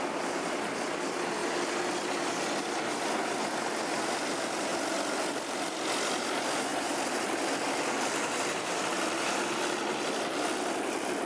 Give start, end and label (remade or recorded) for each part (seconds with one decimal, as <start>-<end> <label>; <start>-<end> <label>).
0.0-11.3 recorded